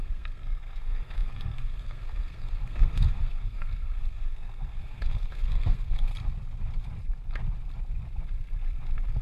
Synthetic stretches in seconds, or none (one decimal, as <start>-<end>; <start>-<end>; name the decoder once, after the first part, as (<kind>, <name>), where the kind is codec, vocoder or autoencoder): 0.0-6.1 (codec, SNAC)